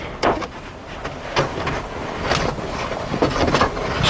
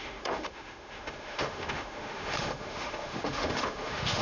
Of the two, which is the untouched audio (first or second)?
first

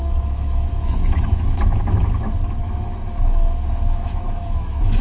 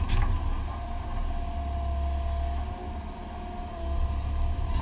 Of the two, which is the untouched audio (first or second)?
second